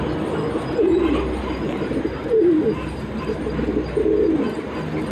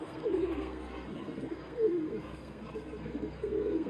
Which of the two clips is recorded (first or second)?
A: first